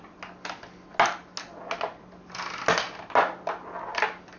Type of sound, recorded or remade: recorded